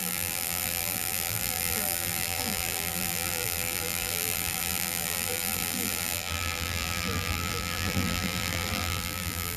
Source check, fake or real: fake